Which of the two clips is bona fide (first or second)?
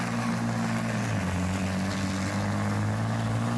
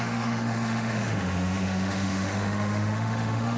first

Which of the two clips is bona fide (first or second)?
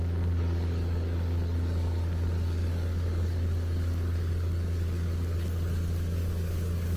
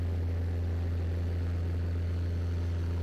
second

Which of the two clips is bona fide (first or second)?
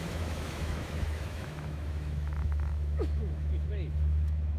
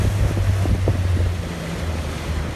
second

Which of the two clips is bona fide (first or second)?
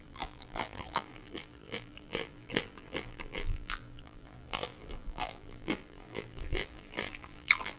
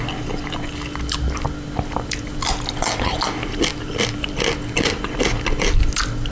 second